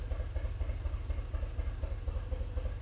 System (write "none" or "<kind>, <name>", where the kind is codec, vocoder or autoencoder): none